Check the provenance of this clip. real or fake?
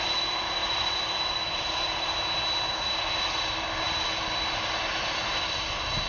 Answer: real